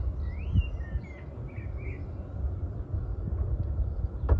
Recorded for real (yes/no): yes